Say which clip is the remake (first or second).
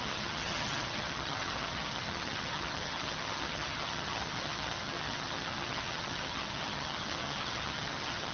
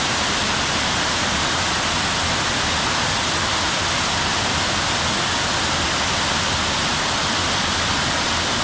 first